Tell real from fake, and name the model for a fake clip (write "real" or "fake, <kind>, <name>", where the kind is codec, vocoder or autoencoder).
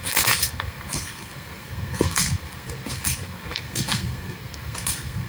fake, codec, SNAC